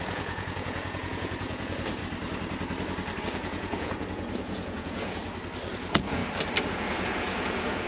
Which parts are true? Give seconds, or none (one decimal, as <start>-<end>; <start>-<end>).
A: 2.0-3.2; 5.2-5.7; 6.2-6.7